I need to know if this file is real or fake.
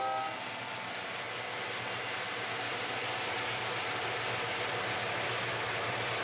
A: real